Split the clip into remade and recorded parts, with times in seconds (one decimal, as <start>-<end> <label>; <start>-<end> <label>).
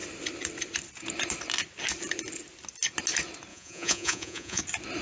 0.0-3.5 recorded; 3.5-4.6 remade; 4.6-5.0 recorded